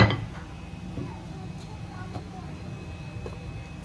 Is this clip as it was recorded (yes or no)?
yes